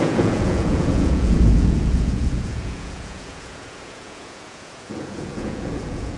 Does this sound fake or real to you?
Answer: fake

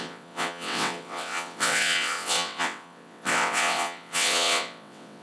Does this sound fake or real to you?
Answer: fake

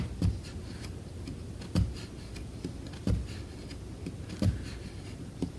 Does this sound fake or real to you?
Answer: real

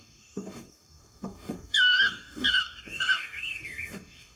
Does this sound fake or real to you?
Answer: fake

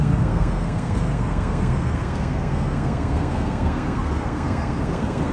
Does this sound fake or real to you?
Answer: fake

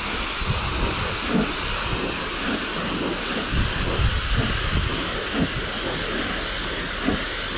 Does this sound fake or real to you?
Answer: real